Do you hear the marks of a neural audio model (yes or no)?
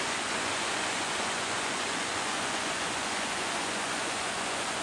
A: yes